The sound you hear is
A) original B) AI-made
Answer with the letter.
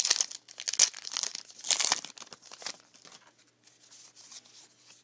A